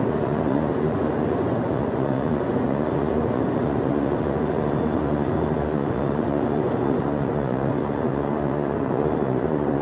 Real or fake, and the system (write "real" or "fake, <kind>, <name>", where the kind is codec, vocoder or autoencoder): fake, vocoder, Vocos